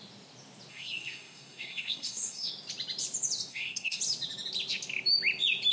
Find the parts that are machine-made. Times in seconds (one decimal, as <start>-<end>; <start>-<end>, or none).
0.7-2.5; 3.5-4.0